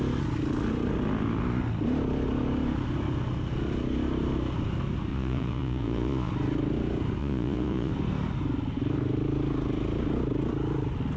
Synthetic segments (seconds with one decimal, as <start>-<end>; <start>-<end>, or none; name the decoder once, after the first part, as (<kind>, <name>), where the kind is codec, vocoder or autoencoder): 5.1-6.3 (vocoder, Vocos); 7.2-7.9